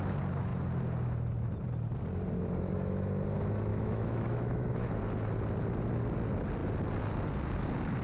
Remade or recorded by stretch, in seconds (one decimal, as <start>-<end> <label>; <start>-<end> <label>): 0.0-3.7 recorded; 3.7-4.9 remade; 4.9-8.0 recorded